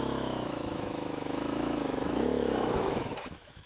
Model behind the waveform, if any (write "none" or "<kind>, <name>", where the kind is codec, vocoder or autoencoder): autoencoder, DAC-VAE